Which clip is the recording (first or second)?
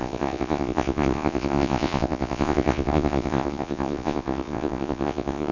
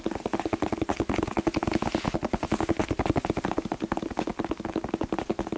second